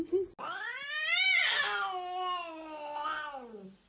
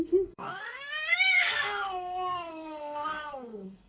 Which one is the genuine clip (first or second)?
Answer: first